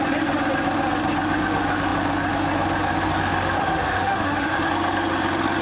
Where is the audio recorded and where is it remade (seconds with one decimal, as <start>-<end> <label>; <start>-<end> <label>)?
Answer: 0.0-3.6 recorded; 3.6-4.7 remade; 4.7-5.6 recorded